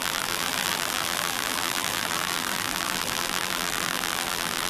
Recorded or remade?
remade